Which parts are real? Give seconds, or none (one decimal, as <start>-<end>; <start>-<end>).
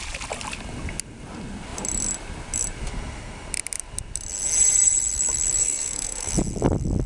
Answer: 0.0-5.6; 6.3-7.1